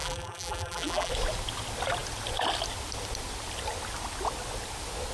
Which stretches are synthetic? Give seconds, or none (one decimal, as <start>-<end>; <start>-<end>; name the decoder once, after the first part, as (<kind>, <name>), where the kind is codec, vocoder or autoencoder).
0.0-1.1 (vocoder, BigVGAN v2)